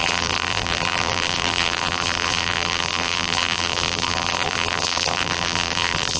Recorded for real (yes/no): no